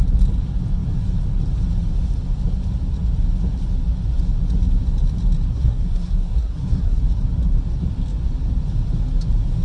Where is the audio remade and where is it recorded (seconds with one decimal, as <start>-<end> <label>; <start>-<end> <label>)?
0.0-5.5 recorded; 5.5-7.0 remade; 7.0-9.6 recorded